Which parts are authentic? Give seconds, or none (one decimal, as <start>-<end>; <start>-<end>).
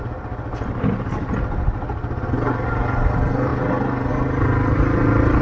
0.0-5.4